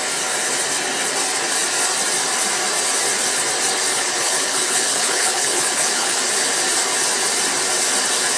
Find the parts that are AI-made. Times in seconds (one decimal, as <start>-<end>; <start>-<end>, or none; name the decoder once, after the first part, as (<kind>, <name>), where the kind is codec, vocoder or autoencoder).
3.9-6.2 (codec, HILCodec)